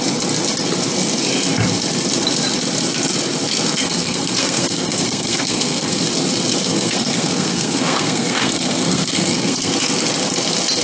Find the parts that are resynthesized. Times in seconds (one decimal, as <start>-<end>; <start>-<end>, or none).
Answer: 3.8-6.0; 6.7-9.7